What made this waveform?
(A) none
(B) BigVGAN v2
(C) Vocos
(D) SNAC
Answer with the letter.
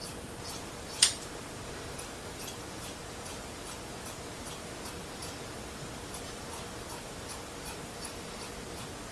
B